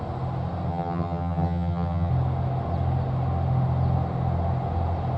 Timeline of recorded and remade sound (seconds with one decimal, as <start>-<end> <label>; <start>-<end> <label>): 0.0-0.7 recorded; 0.7-2.1 remade; 2.1-5.2 recorded